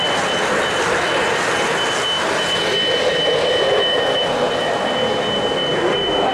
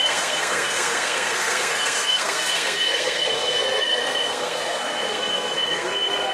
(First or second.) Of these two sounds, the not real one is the second